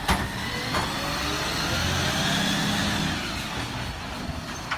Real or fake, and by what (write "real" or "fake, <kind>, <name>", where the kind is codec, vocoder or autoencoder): real